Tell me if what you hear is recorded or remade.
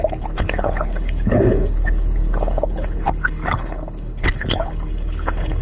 remade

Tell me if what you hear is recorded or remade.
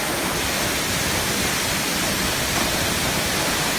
recorded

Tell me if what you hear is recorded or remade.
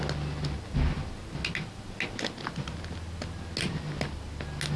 recorded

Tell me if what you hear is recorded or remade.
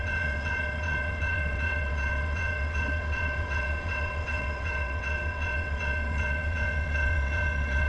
remade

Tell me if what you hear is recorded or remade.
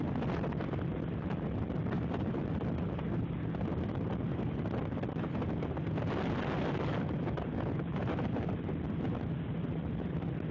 recorded